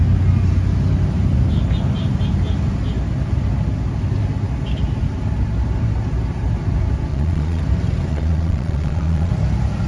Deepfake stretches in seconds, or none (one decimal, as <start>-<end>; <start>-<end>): 7.1-7.6; 8.1-9.3